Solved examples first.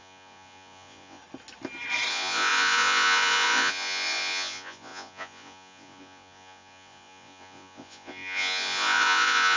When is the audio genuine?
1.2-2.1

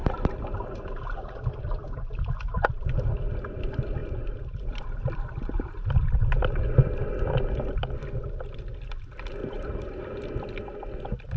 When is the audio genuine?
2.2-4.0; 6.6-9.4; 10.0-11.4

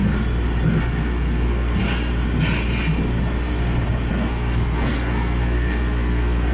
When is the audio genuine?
0.0-0.8; 1.8-4.1

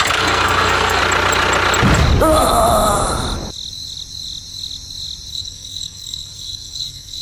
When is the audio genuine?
1.0-5.3